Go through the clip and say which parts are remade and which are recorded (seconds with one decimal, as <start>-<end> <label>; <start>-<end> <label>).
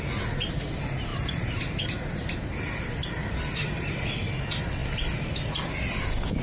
0.0-1.1 recorded; 1.1-4.0 remade; 4.0-6.4 recorded